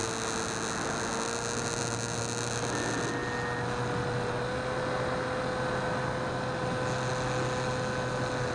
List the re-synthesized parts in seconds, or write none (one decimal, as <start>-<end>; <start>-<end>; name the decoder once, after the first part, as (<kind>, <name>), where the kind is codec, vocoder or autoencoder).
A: none